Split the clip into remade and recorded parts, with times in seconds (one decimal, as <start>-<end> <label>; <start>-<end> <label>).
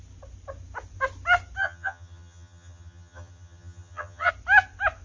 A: 0.0-1.6 recorded; 1.6-4.3 remade; 4.3-5.0 recorded